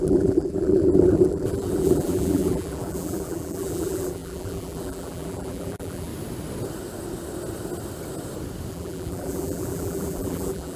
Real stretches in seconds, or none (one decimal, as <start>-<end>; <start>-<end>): 6.1-8.7